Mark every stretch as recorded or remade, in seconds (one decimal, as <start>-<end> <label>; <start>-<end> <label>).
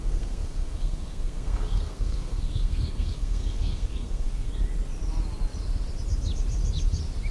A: 0.0-4.5 remade; 4.5-7.3 recorded